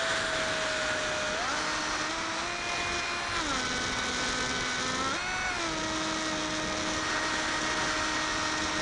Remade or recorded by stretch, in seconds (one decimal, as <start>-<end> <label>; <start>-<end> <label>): 0.0-8.8 recorded